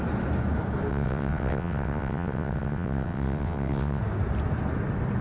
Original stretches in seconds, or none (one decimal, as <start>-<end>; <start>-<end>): 0.0-0.9; 4.0-5.2